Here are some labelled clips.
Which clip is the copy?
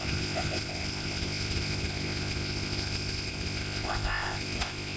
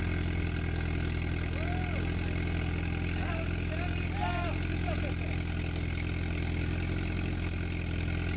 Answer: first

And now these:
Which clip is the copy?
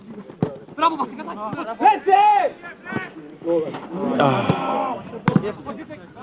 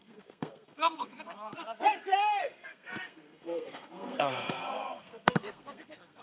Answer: second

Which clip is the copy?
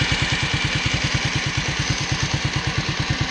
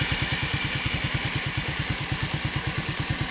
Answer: second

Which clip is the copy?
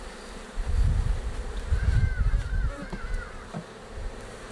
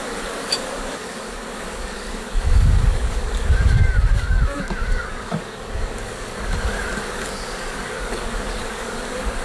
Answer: second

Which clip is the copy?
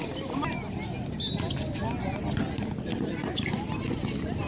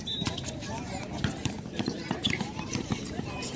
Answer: second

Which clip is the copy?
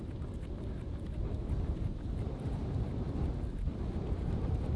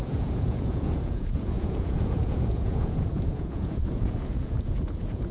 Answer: second